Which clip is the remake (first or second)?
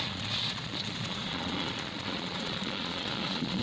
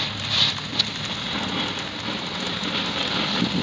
first